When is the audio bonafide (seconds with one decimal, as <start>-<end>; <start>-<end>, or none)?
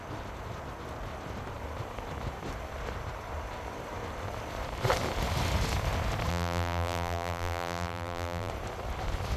0.0-6.3; 8.5-9.4